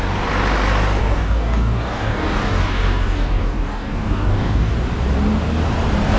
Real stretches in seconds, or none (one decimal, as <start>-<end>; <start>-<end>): 0.0-1.0; 4.7-6.2